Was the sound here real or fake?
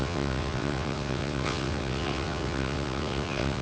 fake